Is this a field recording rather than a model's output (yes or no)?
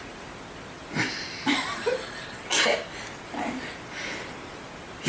yes